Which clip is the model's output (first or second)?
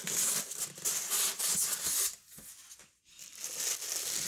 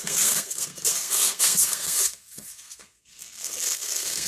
second